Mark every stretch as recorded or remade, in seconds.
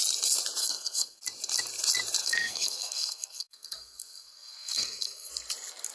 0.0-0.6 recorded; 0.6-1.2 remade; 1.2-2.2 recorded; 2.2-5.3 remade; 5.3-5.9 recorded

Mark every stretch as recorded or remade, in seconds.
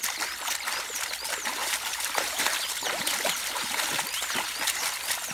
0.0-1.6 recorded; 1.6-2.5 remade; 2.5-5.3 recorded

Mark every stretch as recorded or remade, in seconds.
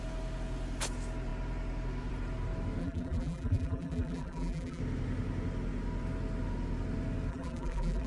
0.0-2.8 recorded; 2.8-4.8 remade; 4.8-7.3 recorded; 7.3-8.1 remade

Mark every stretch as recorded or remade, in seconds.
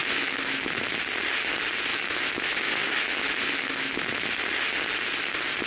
0.0-1.0 remade; 1.0-1.9 recorded; 1.9-4.4 remade; 4.4-5.7 recorded